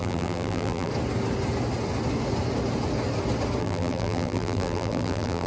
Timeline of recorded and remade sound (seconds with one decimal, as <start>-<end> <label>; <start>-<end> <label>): 0.0-0.9 remade; 0.9-3.6 recorded; 3.6-5.5 remade